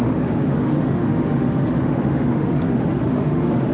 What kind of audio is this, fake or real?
fake